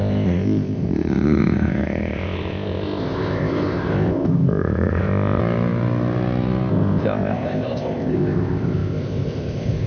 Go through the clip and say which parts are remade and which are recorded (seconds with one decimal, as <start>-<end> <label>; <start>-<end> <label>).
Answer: 0.0-5.4 remade; 5.4-6.7 recorded; 6.7-9.9 remade